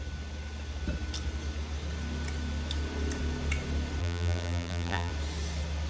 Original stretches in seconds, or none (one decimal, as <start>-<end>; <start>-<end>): 0.0-4.0; 5.1-5.9